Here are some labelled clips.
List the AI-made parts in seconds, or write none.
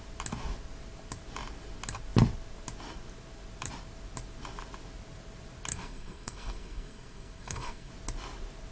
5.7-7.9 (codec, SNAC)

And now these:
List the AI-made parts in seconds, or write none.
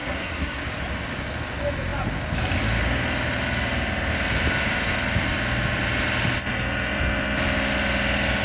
0.0-0.6 (codec, SNAC)